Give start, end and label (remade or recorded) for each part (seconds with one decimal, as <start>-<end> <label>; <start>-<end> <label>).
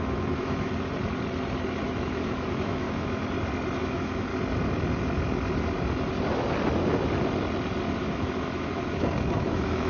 0.0-0.7 remade; 0.7-1.8 recorded; 1.8-3.2 remade; 3.2-3.8 recorded; 3.8-4.3 remade; 4.3-8.0 recorded; 8.0-9.9 remade